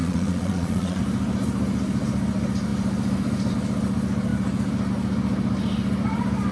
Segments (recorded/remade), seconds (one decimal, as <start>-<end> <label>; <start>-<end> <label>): 0.0-1.0 remade; 1.0-6.5 recorded

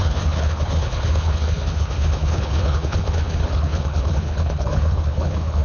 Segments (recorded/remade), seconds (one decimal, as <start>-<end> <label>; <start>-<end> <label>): 0.0-5.6 remade

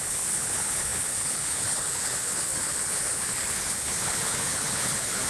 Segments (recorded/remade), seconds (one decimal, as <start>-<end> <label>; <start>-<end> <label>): 0.0-5.3 remade

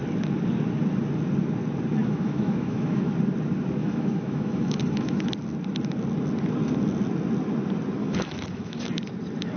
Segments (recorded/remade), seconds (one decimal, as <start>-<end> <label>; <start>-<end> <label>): 0.0-2.0 recorded; 2.0-3.1 remade; 3.1-3.8 recorded; 3.8-5.3 remade; 5.3-8.0 recorded; 8.0-8.9 remade; 8.9-9.6 recorded

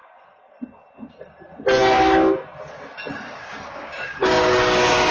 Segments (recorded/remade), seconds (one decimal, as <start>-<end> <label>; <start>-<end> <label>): 0.0-3.1 recorded; 3.1-5.1 remade

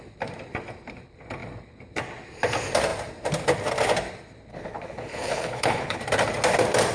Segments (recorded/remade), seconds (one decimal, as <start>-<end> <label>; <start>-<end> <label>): 0.0-4.5 recorded; 4.5-6.0 remade; 6.0-6.9 recorded